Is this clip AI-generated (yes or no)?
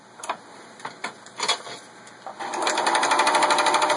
no